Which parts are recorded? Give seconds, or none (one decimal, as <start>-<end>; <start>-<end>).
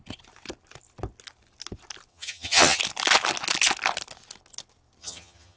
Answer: 0.0-2.1; 2.8-5.0